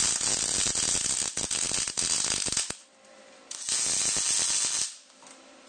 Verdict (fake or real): real